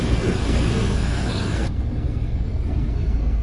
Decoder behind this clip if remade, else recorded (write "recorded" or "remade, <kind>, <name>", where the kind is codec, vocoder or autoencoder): remade, codec, SNAC